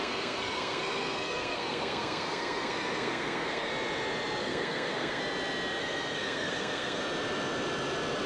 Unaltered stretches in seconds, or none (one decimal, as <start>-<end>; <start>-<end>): 3.7-4.4; 5.2-5.8; 7.0-8.3